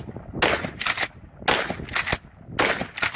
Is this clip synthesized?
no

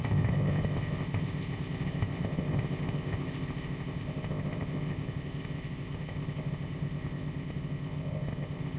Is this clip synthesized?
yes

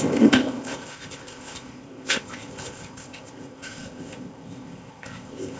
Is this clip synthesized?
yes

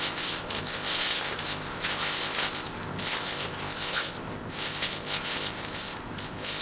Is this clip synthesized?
yes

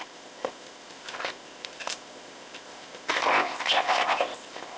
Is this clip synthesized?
yes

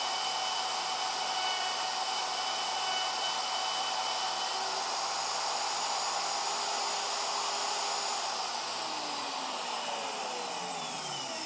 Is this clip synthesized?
no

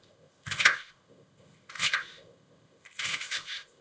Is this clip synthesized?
yes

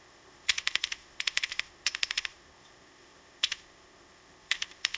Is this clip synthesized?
yes